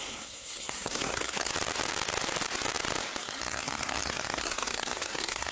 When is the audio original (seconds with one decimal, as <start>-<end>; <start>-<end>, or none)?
1.5-3.2